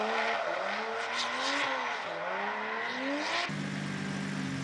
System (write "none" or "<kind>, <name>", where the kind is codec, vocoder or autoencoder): none